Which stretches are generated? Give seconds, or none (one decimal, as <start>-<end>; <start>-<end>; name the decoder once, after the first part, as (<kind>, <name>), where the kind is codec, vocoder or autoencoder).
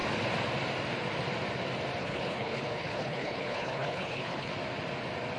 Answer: 2.0-4.5 (codec, HILCodec)